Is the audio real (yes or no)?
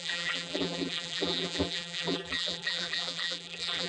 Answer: no